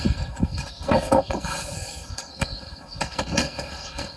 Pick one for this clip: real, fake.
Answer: fake